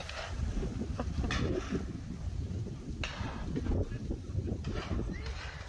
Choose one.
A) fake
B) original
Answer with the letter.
B